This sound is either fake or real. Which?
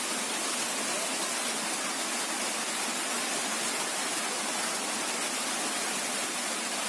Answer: real